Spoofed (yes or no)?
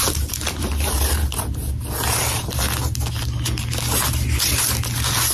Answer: no